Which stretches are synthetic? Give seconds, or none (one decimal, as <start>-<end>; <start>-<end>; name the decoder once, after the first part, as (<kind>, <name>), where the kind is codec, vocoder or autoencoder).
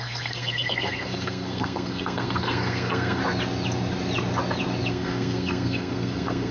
0.0-3.2 (codec, SNAC); 4.9-6.5